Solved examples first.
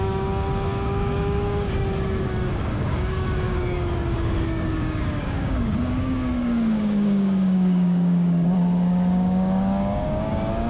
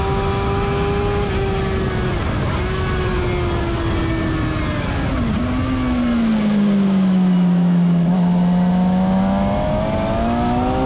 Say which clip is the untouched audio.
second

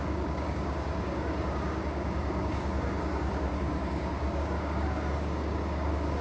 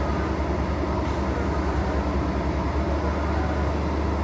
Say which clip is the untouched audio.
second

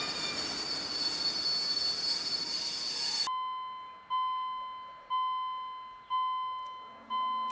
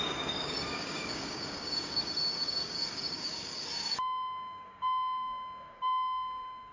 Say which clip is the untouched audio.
first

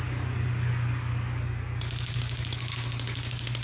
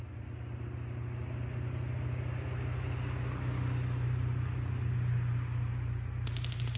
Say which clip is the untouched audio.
second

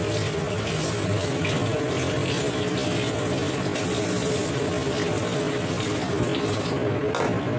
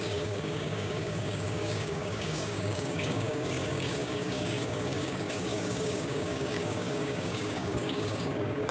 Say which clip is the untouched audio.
first